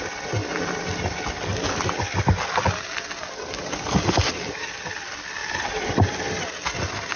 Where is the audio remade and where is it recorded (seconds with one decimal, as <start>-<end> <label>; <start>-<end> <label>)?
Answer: 0.0-5.4 recorded; 5.4-5.9 remade; 5.9-7.2 recorded